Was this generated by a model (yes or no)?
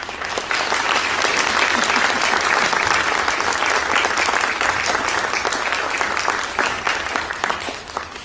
no